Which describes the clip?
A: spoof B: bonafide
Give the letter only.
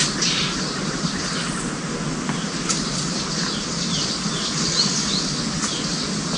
B